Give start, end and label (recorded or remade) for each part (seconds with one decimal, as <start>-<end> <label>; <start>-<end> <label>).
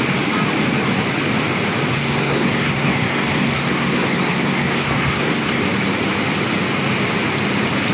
0.0-1.9 recorded; 1.9-5.6 remade; 5.6-7.9 recorded